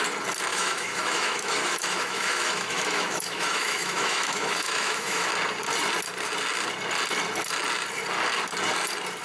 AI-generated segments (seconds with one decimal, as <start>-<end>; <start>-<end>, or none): 0.5-5.3